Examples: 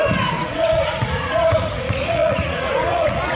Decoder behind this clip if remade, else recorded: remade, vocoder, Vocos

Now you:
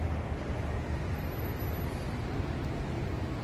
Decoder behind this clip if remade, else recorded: recorded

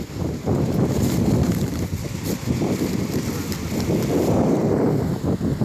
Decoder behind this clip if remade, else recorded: remade, vocoder, BigVGAN v2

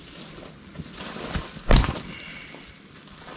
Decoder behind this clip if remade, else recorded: recorded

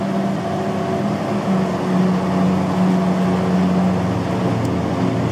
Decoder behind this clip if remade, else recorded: recorded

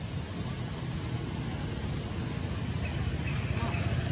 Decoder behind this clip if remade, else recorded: recorded